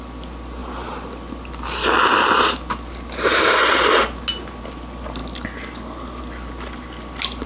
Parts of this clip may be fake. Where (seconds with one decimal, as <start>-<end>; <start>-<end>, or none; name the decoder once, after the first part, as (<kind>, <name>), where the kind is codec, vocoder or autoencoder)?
none